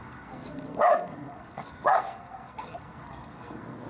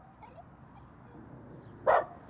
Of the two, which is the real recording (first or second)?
second